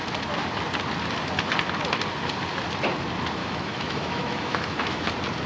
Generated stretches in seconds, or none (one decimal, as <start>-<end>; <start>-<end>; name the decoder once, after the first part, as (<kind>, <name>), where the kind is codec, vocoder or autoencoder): 3.4-5.1 (autoencoder, DAC-VAE)